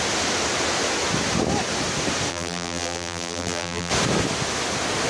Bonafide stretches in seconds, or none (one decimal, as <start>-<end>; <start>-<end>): 0.0-2.3; 3.9-5.1